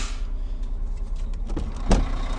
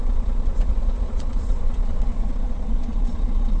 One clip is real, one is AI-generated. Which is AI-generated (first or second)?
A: second